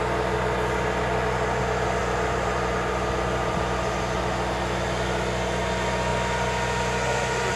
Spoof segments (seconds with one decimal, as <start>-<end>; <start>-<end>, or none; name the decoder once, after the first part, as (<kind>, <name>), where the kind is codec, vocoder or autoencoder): 2.0-4.2 (vocoder, BigVGAN v2)